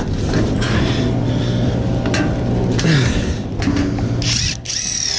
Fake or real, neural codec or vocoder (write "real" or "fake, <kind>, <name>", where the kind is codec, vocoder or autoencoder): real